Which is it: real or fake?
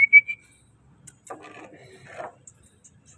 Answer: real